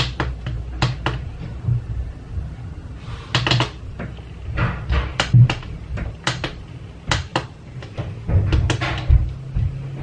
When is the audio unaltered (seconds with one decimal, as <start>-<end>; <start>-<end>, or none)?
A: 0.0-10.0